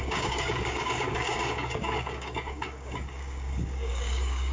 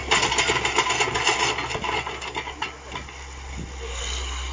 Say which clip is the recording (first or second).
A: second